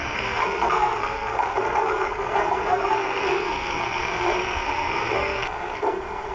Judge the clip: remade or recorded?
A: remade